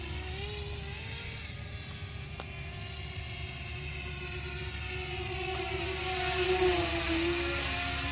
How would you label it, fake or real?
real